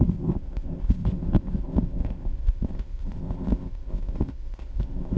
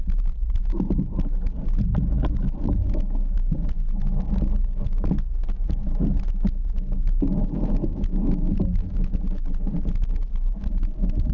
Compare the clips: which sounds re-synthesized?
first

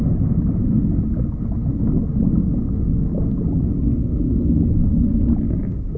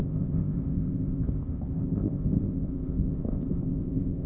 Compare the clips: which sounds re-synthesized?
second